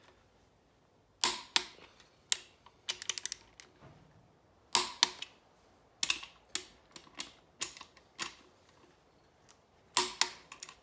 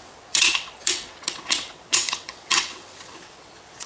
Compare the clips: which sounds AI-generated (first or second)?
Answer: second